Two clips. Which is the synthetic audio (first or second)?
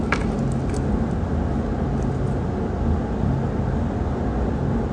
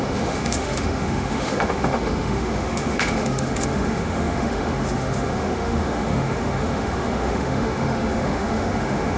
second